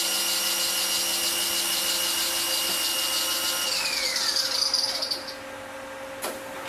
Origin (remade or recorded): recorded